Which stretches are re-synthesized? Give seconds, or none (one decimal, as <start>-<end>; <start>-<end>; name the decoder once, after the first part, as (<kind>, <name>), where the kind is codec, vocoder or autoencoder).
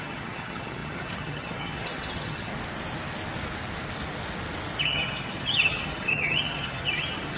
0.0-2.5 (vocoder, HiFi-GAN); 4.8-7.4